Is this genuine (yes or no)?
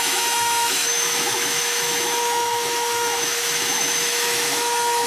no